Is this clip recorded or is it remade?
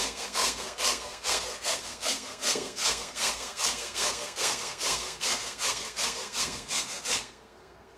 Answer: remade